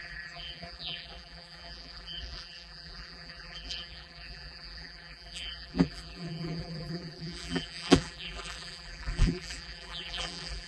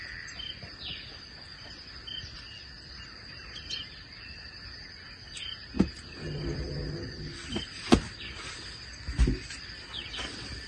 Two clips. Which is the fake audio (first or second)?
first